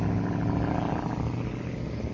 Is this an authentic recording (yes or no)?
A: yes